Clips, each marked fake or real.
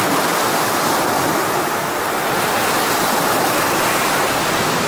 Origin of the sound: real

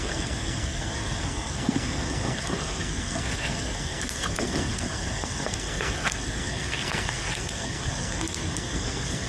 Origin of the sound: fake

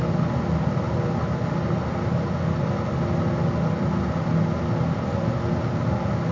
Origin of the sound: real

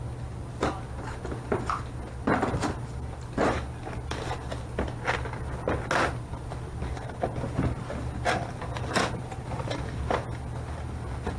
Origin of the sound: real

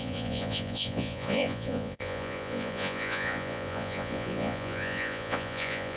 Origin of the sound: fake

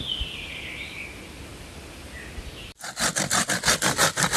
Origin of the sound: real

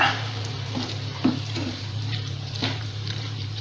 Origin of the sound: fake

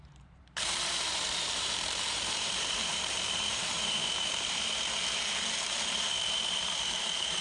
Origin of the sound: fake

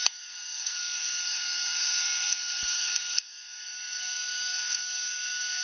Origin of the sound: fake